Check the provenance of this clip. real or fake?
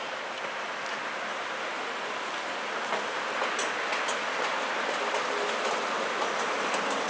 real